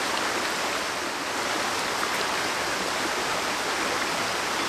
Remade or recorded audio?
recorded